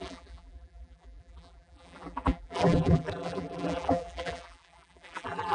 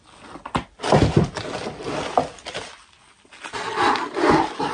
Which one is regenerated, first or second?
first